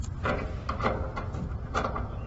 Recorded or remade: recorded